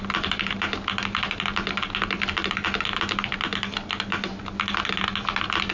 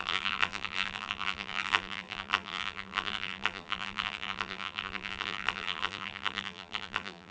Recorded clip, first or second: first